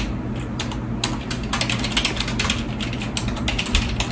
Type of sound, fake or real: real